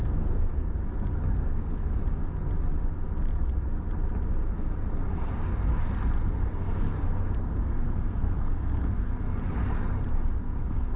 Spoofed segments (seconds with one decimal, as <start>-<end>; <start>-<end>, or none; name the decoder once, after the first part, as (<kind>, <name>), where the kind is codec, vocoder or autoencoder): 0.0-0.8 (codec, SNAC); 1.3-2.0; 6.3-9.1; 10.4-11.0